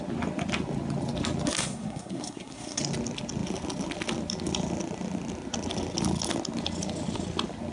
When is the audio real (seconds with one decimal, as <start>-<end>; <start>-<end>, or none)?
0.0-1.6; 2.8-7.7